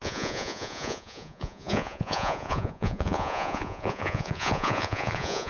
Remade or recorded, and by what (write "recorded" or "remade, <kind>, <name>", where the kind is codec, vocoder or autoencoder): remade, vocoder, Vocos